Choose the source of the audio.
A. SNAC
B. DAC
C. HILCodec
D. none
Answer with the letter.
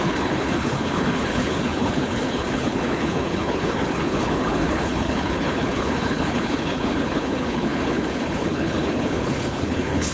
C